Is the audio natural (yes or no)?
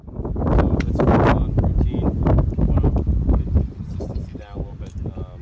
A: yes